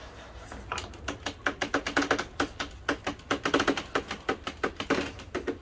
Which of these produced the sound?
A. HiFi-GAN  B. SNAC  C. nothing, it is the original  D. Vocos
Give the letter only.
C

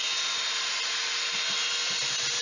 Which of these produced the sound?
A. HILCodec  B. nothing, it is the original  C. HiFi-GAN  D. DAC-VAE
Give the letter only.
B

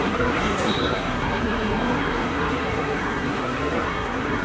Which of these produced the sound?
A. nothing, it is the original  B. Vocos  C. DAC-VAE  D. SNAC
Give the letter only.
D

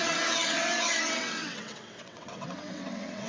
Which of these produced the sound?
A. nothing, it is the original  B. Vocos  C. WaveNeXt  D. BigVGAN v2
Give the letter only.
C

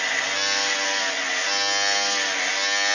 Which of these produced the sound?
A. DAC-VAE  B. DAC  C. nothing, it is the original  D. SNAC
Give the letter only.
C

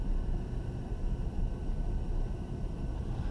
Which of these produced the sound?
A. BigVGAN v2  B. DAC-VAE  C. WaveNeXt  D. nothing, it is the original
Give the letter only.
A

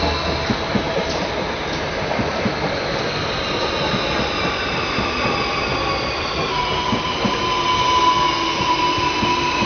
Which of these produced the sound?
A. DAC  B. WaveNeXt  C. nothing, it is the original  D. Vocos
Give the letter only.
C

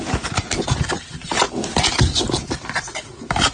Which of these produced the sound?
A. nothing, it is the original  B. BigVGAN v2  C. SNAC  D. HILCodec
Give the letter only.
A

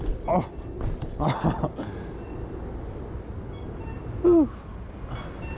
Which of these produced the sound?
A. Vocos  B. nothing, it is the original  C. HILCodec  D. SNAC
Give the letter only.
B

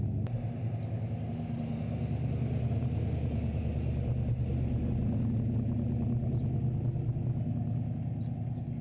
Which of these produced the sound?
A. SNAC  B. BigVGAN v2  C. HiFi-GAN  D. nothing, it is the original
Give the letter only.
D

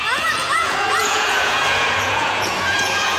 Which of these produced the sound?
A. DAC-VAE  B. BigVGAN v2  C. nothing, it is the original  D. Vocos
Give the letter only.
D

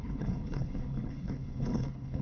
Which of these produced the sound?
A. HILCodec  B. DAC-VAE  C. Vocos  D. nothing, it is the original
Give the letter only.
A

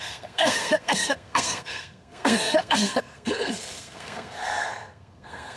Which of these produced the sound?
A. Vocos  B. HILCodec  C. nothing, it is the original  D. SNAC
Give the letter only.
D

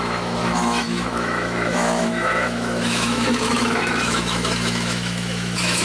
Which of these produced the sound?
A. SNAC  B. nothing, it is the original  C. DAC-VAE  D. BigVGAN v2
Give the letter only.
C